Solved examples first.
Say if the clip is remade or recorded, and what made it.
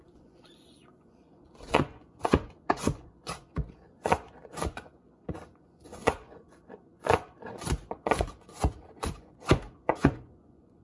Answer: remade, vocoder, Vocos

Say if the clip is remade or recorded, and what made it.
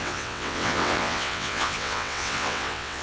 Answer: remade, vocoder, WaveNeXt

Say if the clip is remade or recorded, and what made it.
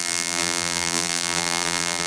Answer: remade, vocoder, BigVGAN v2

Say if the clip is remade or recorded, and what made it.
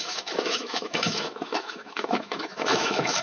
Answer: remade, autoencoder, DAC-VAE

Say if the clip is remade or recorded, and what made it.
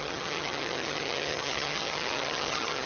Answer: remade, vocoder, HiFi-GAN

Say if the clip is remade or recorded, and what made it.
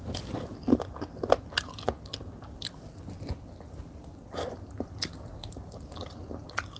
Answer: recorded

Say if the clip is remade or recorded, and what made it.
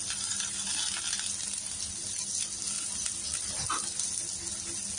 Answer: recorded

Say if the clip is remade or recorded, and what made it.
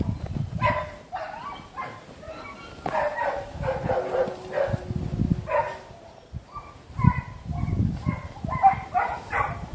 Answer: recorded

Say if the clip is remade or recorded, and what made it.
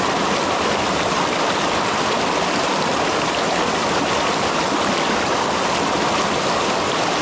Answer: recorded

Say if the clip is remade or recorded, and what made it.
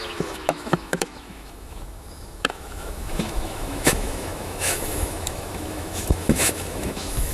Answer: remade, autoencoder, DAC-VAE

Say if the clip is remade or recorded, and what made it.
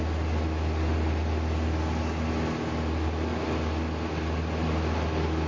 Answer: recorded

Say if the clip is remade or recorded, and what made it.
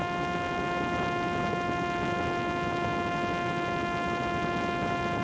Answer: recorded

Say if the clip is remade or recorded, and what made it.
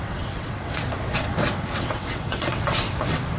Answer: remade, vocoder, WaveNeXt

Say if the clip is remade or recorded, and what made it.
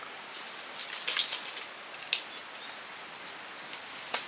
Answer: recorded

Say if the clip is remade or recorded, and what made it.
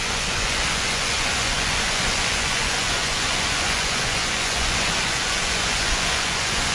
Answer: remade, vocoder, Vocos